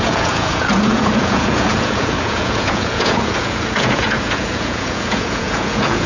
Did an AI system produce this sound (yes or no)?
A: yes